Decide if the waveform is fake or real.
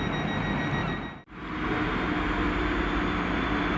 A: real